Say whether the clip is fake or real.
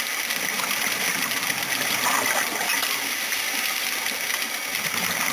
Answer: real